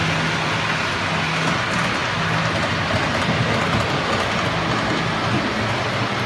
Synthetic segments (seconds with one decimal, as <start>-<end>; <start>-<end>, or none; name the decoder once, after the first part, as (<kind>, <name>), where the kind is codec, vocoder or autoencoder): none